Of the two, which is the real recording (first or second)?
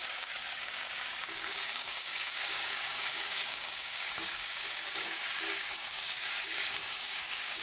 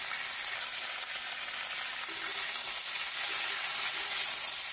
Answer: second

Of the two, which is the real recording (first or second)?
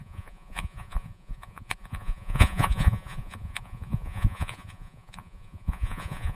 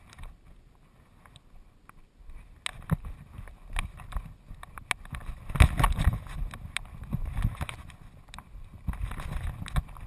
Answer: second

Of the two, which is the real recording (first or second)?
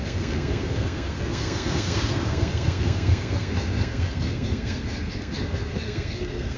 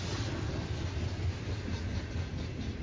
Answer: second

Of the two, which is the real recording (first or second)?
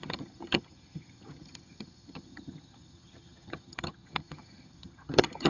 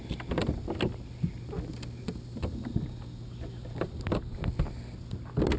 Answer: second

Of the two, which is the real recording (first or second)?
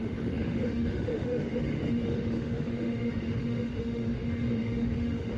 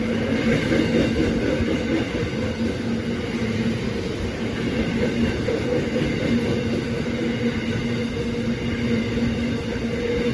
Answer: second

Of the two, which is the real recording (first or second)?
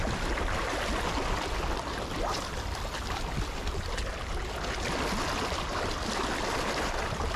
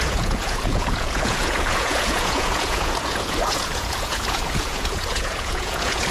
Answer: first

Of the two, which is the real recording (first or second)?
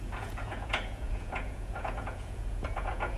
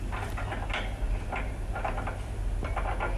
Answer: second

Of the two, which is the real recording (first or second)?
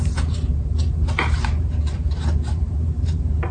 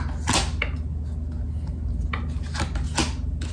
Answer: second